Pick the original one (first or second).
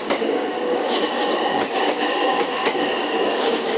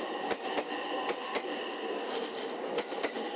second